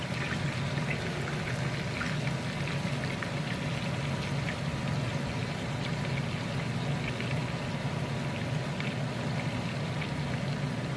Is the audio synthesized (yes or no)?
no